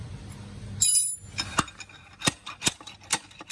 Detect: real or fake real